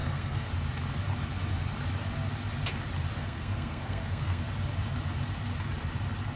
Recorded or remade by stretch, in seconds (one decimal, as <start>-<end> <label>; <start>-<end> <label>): 0.0-0.5 remade; 0.5-3.2 recorded; 3.2-4.4 remade; 4.4-6.4 recorded